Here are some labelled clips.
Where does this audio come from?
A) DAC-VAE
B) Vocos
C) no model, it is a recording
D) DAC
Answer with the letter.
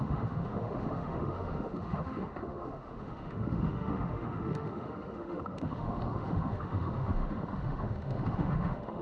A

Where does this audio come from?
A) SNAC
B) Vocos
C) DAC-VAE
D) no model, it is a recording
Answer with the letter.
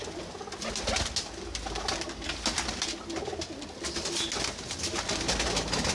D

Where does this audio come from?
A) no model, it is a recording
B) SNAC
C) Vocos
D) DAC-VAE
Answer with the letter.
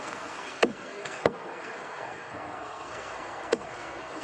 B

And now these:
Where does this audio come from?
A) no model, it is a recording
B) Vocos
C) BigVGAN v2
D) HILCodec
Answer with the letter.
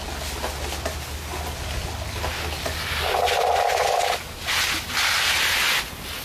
A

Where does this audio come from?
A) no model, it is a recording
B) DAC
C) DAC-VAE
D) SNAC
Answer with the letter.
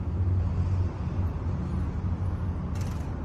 A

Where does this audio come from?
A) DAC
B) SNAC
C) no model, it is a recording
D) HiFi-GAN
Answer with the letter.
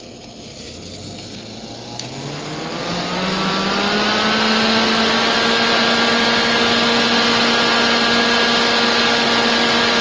C